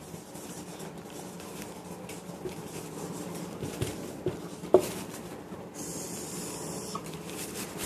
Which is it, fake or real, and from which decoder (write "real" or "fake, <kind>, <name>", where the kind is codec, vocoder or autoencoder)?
fake, vocoder, BigVGAN v2